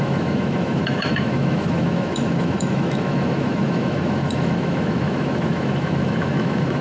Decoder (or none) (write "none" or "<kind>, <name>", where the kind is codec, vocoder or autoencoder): autoencoder, DAC-VAE